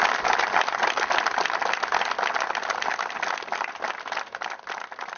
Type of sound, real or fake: real